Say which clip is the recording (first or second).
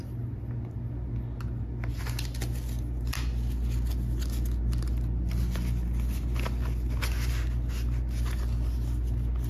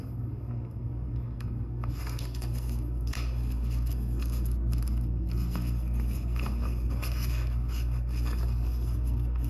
first